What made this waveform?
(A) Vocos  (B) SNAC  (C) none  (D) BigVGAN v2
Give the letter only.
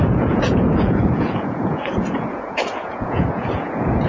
A